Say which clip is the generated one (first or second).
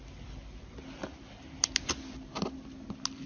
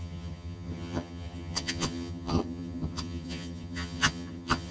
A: second